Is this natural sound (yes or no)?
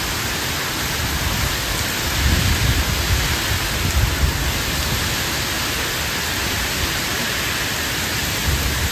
yes